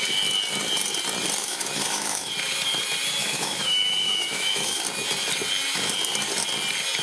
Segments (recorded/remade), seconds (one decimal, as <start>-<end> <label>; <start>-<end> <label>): 0.0-1.4 recorded; 1.4-2.3 remade; 2.3-3.2 recorded; 3.2-4.8 remade; 4.8-7.0 recorded